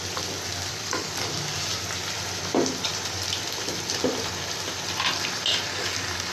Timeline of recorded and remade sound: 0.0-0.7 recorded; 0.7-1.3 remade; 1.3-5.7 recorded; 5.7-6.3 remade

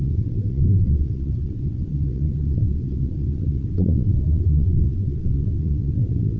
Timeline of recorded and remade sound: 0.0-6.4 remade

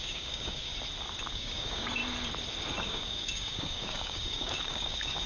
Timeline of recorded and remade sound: 0.0-0.7 remade; 0.7-1.3 recorded; 1.3-2.0 remade; 2.0-2.8 recorded; 2.8-5.3 remade

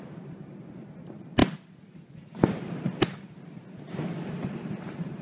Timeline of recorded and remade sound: 0.0-5.2 recorded